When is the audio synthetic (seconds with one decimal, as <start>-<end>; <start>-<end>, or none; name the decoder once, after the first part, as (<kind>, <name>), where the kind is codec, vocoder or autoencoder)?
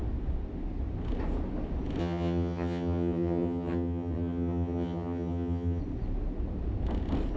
2.0-5.8 (vocoder, HiFi-GAN)